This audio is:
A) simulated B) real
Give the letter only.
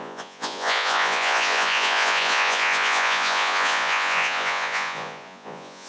A